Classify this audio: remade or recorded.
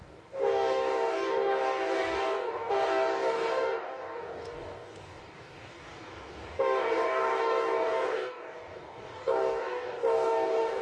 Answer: remade